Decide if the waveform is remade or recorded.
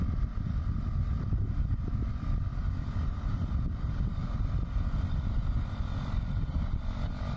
remade